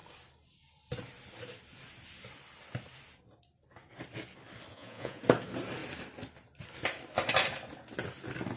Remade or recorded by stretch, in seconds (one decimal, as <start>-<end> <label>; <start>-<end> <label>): 0.0-4.7 recorded; 4.7-5.2 remade; 5.2-8.6 recorded